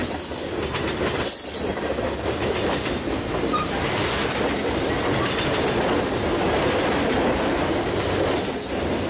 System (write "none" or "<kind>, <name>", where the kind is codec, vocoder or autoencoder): none